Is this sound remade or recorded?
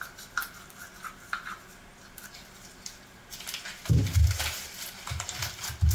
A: recorded